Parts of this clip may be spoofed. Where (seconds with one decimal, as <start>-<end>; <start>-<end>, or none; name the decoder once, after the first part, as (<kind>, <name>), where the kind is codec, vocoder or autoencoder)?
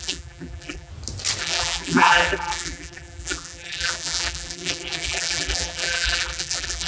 0.0-0.9 (vocoder, BigVGAN v2); 1.4-6.9